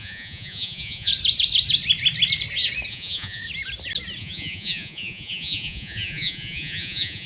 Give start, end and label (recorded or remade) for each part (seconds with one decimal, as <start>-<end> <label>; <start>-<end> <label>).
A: 0.0-1.1 remade; 1.1-2.9 recorded; 2.9-3.4 remade; 3.4-4.2 recorded; 4.2-7.3 remade